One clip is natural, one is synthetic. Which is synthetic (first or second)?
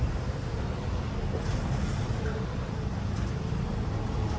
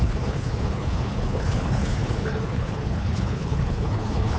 second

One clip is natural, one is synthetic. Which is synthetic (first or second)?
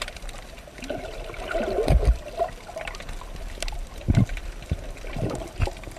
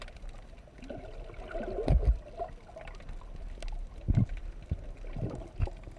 first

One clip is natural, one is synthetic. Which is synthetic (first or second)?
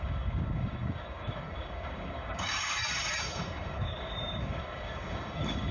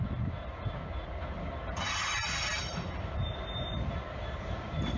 first